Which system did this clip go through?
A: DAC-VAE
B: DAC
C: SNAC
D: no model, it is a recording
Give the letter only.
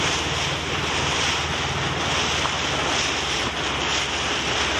D